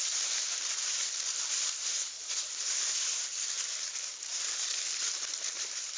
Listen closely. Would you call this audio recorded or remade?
remade